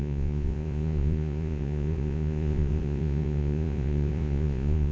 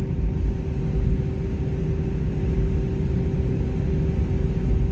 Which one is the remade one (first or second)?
first